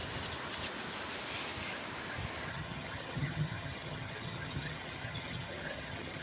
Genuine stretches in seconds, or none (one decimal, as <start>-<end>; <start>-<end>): 0.0-2.5